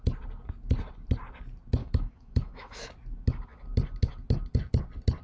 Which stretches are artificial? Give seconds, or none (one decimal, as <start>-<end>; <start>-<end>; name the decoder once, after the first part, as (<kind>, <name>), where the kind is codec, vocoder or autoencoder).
1.8-2.9 (autoencoder, DAC-VAE)